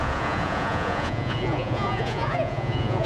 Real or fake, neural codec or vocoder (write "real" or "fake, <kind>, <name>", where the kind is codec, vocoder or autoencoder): fake, vocoder, Vocos